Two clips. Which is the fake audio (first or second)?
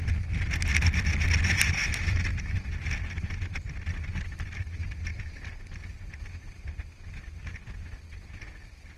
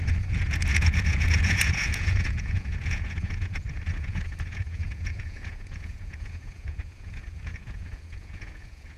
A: second